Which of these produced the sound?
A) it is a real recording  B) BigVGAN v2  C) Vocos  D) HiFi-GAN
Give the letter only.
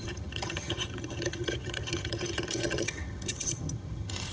D